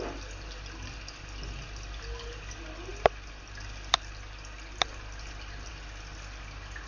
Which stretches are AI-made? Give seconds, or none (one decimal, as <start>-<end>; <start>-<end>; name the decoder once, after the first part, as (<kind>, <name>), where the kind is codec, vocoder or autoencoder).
none